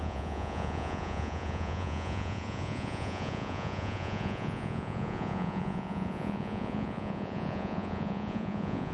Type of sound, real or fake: fake